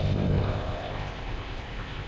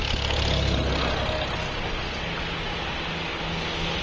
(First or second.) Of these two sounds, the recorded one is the second